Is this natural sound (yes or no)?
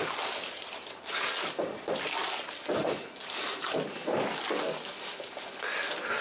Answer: yes